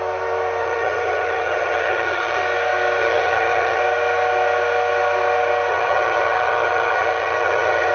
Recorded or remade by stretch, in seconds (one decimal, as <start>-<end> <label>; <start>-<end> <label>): 0.0-0.6 recorded; 0.6-2.4 remade; 2.4-3.0 recorded; 3.0-3.8 remade; 3.8-5.7 recorded; 5.7-7.9 remade